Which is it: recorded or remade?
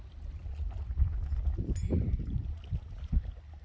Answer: recorded